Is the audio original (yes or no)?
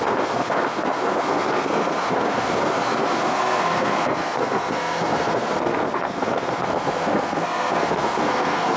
no